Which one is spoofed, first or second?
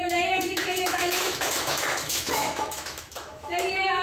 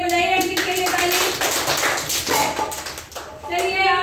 first